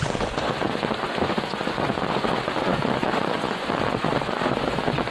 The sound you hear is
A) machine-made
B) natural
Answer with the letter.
A